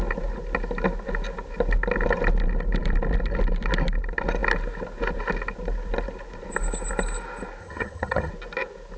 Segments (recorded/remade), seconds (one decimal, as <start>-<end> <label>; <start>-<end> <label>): 0.0-7.6 recorded; 7.6-8.3 remade; 8.3-9.0 recorded